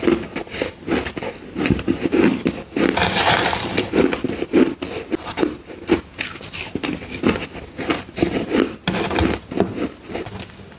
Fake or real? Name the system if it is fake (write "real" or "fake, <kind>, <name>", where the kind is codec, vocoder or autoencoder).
real